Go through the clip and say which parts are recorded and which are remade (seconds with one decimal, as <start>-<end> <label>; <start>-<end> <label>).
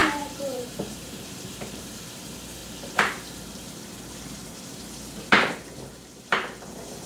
0.0-2.2 remade; 2.2-2.6 recorded; 2.6-7.1 remade